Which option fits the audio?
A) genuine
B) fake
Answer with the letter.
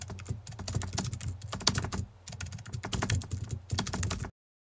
A